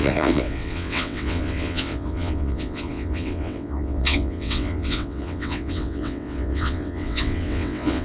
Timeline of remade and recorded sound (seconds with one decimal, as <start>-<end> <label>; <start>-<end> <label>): 0.0-8.0 remade

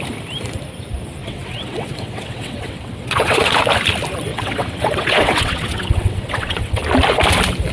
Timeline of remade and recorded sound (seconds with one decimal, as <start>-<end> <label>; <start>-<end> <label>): 0.0-1.2 recorded; 1.2-3.7 remade; 3.7-4.3 recorded; 4.3-6.8 remade; 6.8-7.7 recorded

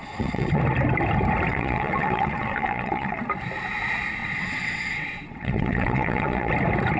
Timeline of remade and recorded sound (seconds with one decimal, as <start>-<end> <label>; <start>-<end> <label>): 0.0-0.6 remade; 0.6-1.5 recorded; 1.5-3.2 remade; 3.2-4.2 recorded; 4.2-6.5 remade; 6.5-7.0 recorded